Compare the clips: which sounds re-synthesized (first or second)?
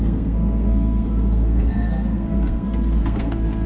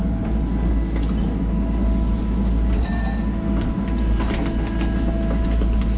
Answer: first